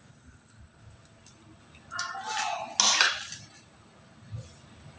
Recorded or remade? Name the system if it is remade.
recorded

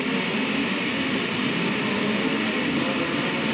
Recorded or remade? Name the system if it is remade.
recorded